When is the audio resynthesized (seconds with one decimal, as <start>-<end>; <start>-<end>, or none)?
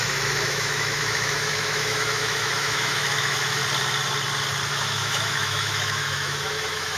0.0-3.6; 4.7-7.0